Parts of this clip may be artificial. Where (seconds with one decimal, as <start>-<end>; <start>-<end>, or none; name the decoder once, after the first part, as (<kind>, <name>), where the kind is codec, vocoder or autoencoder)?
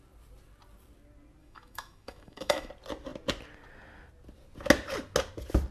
1.4-2.7 (autoencoder, DAC-VAE)